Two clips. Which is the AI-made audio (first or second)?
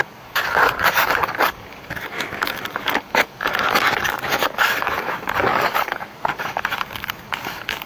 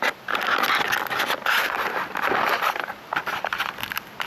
first